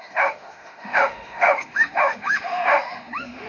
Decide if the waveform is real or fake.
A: fake